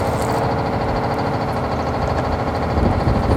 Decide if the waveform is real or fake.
real